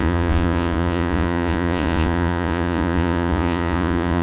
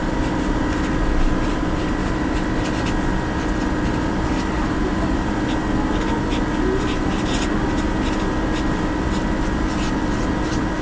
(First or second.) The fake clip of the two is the first